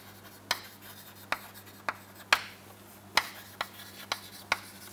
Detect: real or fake real